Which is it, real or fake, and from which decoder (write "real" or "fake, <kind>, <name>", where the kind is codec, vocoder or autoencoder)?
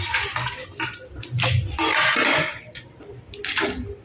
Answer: real